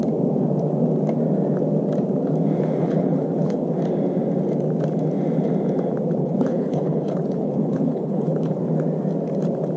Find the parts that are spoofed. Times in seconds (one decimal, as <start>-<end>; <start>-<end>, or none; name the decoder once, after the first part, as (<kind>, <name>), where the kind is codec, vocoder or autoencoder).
2.8-3.6 (codec, HILCodec); 6.2-8.6